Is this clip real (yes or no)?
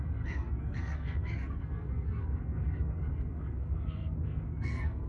no